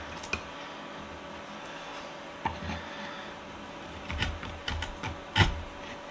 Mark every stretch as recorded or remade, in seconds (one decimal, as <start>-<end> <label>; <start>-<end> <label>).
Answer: 0.0-1.9 recorded; 1.9-4.9 remade; 4.9-6.1 recorded